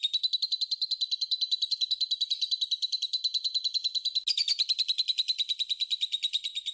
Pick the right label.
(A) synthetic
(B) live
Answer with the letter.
B